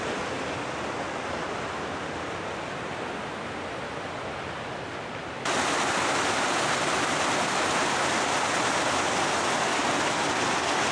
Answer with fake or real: real